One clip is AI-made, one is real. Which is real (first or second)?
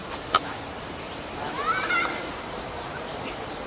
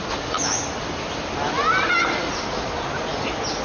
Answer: second